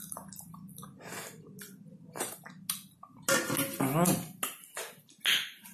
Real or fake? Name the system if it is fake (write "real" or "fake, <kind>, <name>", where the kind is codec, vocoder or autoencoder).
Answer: real